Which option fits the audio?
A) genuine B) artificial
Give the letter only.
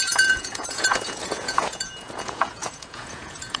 B